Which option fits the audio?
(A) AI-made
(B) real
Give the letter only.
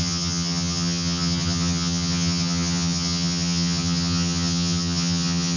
A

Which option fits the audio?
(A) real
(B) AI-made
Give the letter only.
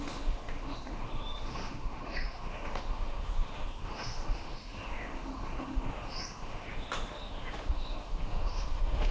B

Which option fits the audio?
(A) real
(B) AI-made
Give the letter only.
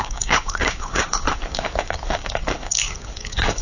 B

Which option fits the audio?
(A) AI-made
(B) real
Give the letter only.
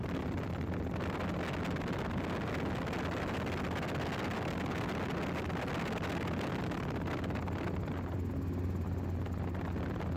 B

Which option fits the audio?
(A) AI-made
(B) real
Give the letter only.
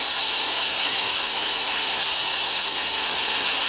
A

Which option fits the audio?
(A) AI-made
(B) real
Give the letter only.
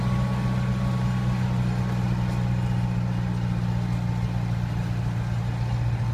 B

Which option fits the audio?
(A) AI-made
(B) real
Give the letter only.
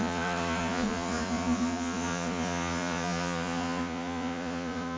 A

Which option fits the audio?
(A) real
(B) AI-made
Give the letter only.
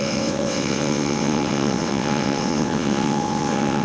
B